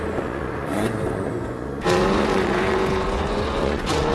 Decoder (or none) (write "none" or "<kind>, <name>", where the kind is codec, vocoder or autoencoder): vocoder, Vocos